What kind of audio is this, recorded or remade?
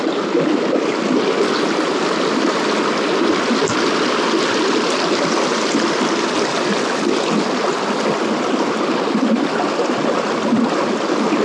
recorded